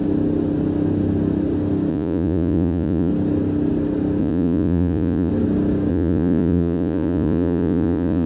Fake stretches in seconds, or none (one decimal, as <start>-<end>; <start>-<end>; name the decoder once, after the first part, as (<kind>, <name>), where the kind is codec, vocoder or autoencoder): 1.9-3.1 (vocoder, Vocos); 4.2-5.3; 5.9-8.3